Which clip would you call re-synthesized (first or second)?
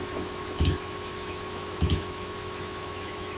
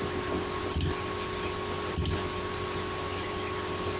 first